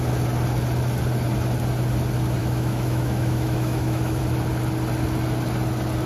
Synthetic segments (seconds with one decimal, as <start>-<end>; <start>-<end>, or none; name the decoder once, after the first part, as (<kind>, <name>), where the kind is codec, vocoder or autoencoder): 2.4-4.2 (autoencoder, DAC-VAE)